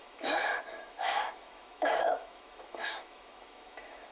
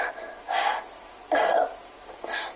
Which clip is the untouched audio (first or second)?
second